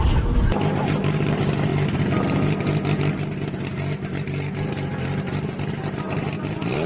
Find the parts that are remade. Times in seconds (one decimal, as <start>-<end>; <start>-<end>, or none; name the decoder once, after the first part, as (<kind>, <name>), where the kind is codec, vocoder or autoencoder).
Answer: none